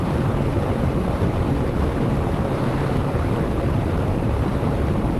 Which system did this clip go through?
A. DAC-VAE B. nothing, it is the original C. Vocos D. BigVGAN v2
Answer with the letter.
D